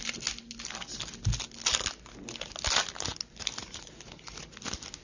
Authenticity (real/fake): real